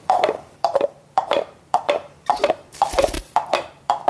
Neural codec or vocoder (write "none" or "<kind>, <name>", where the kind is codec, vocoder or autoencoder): vocoder, BigVGAN v2